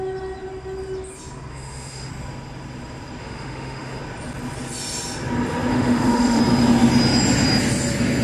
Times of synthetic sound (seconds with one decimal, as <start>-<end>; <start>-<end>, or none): 1.5-2.1; 3.2-4.0; 5.7-6.4